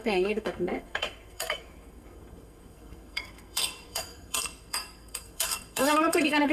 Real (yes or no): no